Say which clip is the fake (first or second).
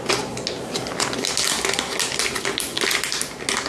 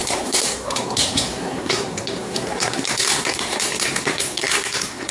second